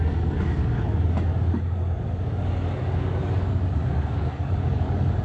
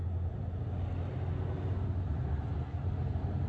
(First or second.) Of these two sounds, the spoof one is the first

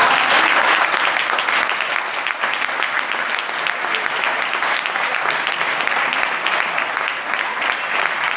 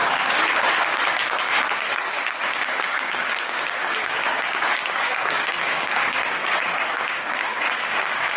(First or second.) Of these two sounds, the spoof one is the second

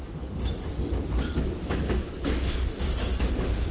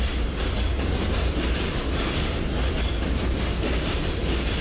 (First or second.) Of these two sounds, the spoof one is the first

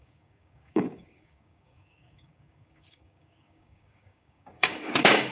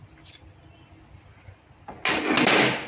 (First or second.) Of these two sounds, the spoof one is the first